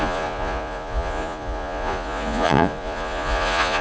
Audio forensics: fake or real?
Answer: fake